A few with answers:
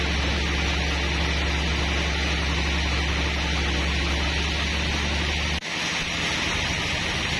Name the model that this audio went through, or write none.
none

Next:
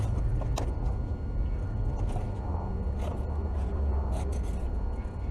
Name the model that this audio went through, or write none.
none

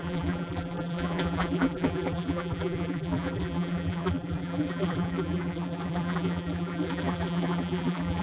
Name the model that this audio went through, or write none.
vocoder, BigVGAN v2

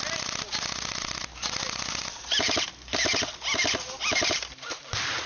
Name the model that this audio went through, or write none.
vocoder, BigVGAN v2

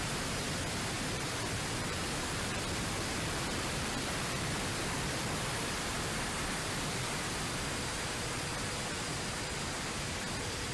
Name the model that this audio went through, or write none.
vocoder, BigVGAN v2